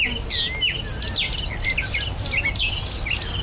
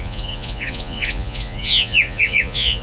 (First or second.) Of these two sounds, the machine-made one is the second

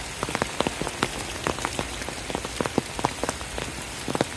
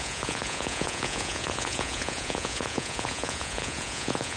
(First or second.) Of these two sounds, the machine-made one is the second